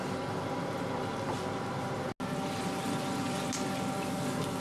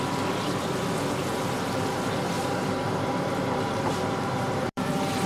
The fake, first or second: second